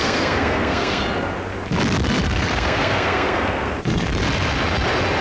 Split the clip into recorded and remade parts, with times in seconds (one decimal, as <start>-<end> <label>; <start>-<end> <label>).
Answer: 0.0-1.0 remade; 1.0-2.4 recorded; 2.4-4.1 remade; 4.1-5.2 recorded